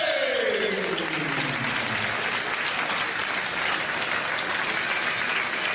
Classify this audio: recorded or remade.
recorded